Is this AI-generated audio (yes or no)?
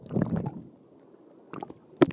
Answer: no